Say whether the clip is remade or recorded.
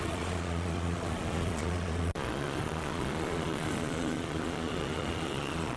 remade